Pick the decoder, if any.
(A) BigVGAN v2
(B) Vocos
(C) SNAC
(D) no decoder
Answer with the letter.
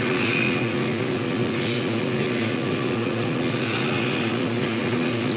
B